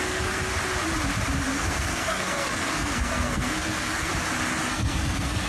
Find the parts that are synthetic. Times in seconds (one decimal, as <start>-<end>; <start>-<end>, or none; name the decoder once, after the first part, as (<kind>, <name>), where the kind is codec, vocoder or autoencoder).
0.0-0.5 (codec, SNAC); 1.5-4.1; 4.7-5.5